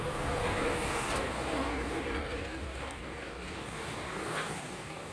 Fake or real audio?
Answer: fake